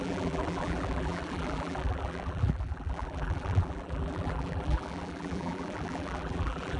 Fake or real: fake